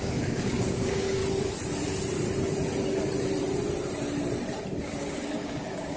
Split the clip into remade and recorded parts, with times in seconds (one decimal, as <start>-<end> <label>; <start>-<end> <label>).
0.0-1.2 remade; 1.2-4.8 recorded; 4.8-6.0 remade